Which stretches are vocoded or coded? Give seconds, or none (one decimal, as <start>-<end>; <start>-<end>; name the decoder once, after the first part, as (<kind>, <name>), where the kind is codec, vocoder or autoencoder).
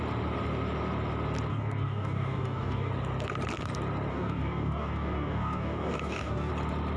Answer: 1.5-2.9 (codec, DAC); 4.1-6.5